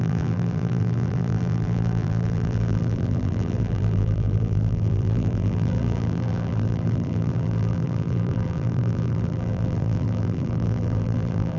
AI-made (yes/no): yes